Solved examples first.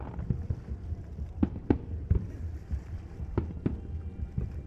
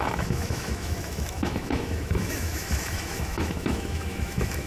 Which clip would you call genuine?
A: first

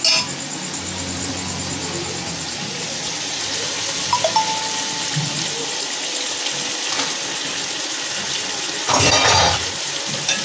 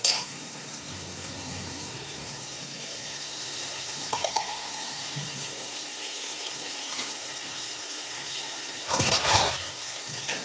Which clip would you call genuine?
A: first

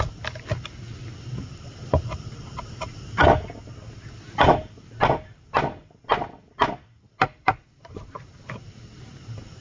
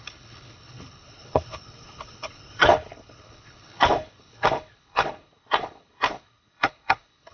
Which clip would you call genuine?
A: first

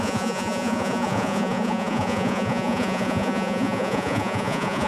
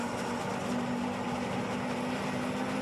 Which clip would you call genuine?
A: second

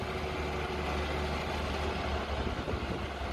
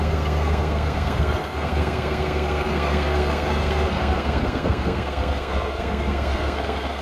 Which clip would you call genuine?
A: first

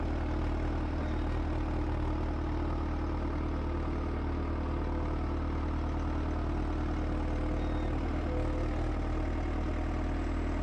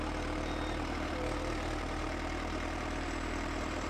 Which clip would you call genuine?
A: first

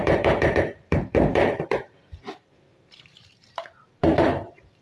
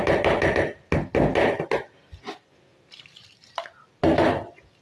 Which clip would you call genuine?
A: second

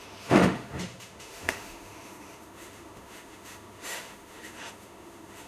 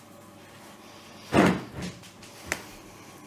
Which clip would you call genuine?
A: second